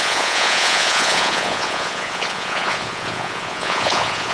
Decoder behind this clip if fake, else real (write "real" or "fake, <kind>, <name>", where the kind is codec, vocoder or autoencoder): fake, vocoder, Vocos